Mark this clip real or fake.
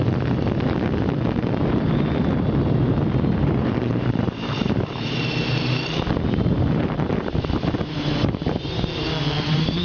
fake